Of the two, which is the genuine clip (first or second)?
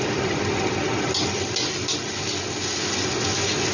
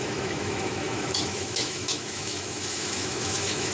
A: first